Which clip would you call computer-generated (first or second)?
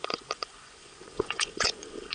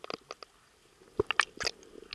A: first